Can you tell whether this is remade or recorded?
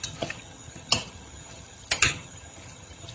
remade